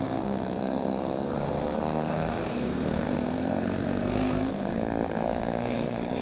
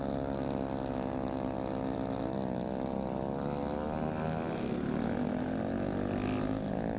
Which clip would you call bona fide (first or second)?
second